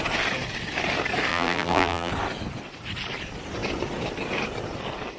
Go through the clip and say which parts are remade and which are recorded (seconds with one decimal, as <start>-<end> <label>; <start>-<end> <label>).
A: 0.0-1.3 recorded; 1.3-2.1 remade; 2.1-5.2 recorded